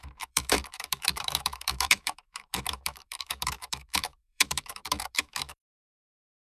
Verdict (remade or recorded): remade